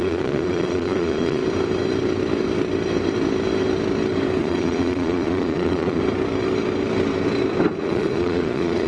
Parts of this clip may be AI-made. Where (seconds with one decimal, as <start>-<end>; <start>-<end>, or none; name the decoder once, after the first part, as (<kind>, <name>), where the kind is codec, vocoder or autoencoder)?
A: 0.0-1.4 (vocoder, Vocos); 4.4-6.0; 7.8-8.9